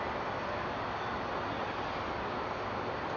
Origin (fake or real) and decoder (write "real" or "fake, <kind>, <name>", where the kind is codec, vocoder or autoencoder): real